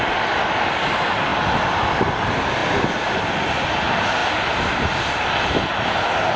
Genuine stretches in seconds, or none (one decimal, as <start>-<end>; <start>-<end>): 0.0-6.4